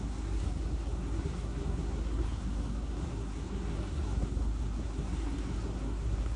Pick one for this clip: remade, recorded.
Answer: remade